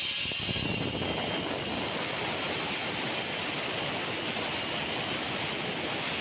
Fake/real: real